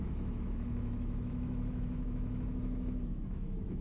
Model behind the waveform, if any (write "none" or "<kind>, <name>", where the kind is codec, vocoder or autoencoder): autoencoder, DAC-VAE